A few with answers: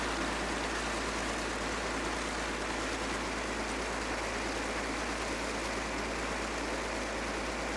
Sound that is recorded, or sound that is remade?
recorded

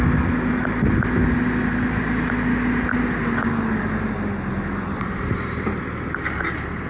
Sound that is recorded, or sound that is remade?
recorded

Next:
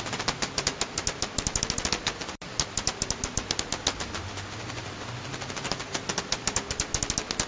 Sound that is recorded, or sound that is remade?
recorded